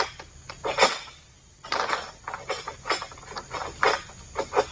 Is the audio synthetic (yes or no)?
no